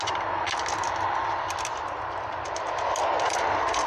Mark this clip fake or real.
real